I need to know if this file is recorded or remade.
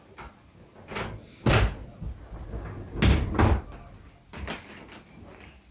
recorded